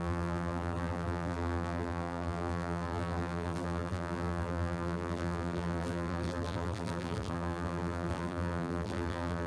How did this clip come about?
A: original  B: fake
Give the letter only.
B